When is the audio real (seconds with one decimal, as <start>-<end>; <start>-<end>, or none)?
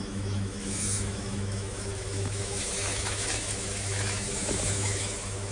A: none